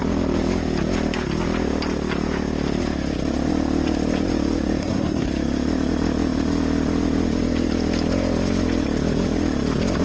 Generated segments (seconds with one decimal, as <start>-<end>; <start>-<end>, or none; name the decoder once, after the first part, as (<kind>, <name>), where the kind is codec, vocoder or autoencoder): 4.8-5.3 (codec, SNAC)